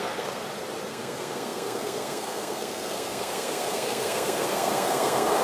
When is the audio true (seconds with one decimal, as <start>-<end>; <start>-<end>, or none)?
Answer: 0.4-0.9